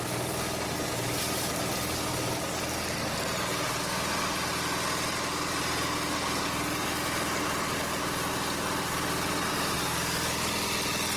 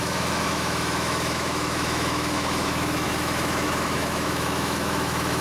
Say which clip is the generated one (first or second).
second